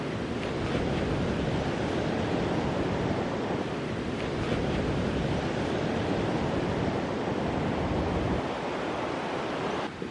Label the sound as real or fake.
fake